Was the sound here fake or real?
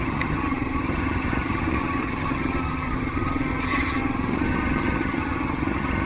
fake